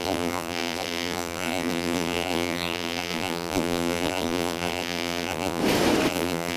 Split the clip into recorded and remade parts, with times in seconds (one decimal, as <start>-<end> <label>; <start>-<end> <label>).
0.0-5.6 remade; 5.6-6.1 recorded; 6.1-6.6 remade